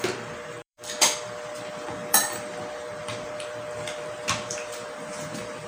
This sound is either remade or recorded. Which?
remade